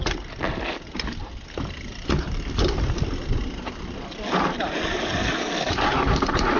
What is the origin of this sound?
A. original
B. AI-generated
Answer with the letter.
A